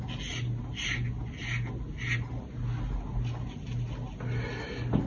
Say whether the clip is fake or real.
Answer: real